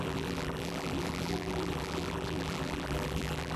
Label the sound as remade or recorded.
remade